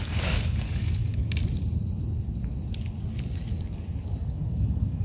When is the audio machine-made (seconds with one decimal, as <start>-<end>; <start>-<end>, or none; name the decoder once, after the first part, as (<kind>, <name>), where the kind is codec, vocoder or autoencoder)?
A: 0.0-1.2 (codec, DAC); 4.2-5.0